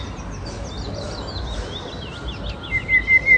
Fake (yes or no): no